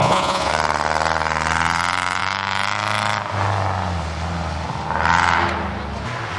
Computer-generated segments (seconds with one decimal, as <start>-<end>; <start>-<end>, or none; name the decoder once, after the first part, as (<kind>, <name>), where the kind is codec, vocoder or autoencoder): 0.0-0.5 (vocoder, Vocos)